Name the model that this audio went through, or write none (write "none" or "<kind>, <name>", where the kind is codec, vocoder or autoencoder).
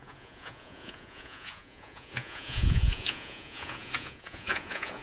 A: vocoder, Vocos